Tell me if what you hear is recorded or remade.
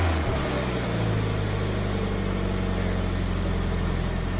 recorded